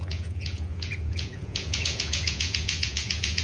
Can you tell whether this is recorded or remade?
remade